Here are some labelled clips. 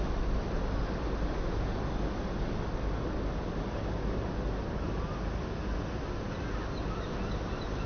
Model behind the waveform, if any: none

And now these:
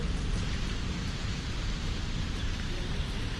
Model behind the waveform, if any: vocoder, BigVGAN v2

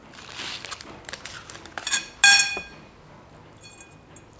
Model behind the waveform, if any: none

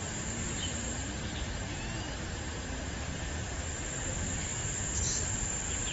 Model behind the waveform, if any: vocoder, BigVGAN v2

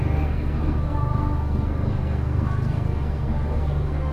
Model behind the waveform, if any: codec, SNAC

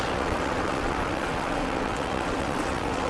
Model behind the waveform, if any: vocoder, WaveNeXt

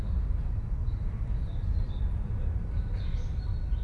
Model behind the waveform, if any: none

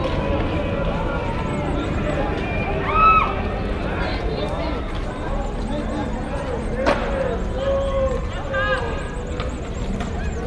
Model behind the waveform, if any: none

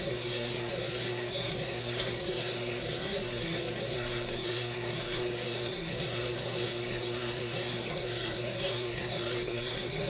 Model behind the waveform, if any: codec, SNAC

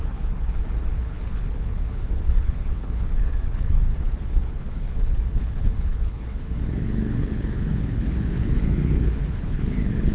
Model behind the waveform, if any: codec, HILCodec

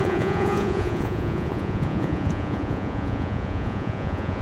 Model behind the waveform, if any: vocoder, Vocos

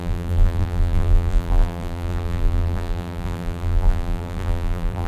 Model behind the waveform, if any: vocoder, BigVGAN v2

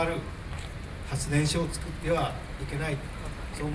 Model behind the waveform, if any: vocoder, BigVGAN v2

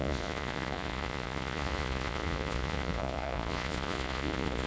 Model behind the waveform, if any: vocoder, Vocos